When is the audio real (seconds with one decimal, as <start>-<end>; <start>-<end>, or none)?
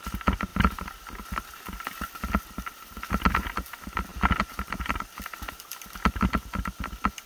0.0-7.3